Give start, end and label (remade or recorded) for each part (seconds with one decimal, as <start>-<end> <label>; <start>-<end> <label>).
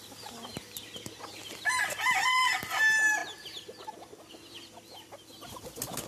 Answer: 0.0-6.1 recorded